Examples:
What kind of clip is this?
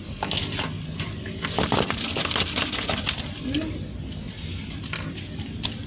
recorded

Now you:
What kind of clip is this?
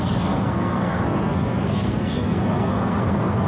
remade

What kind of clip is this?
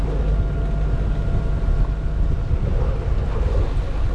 recorded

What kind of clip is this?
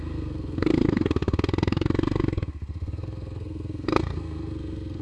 remade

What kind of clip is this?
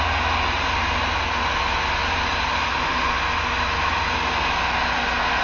recorded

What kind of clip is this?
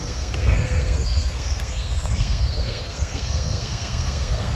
remade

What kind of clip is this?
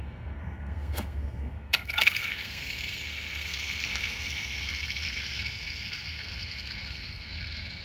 remade